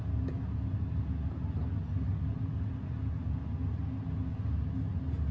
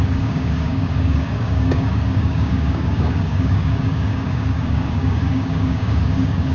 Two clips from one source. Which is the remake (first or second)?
second